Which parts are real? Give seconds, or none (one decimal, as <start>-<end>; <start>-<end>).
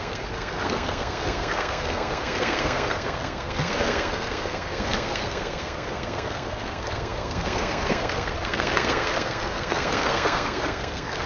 none